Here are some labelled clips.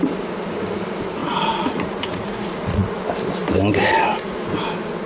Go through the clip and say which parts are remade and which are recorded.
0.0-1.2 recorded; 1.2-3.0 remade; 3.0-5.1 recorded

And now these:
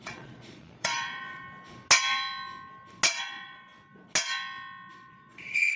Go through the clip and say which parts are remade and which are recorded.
0.0-1.4 remade; 1.4-3.2 recorded; 3.2-3.7 remade; 3.7-4.9 recorded; 4.9-5.8 remade